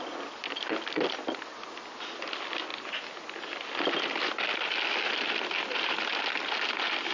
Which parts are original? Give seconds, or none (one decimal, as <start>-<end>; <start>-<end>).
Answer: 0.0-7.1